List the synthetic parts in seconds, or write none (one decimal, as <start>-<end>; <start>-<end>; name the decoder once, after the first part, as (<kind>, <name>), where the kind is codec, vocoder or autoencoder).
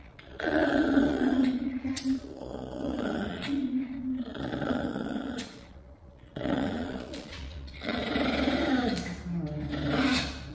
0.0-8.0 (vocoder, Vocos)